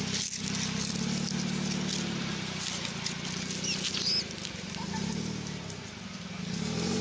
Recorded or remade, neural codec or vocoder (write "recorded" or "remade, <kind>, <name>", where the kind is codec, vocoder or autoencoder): recorded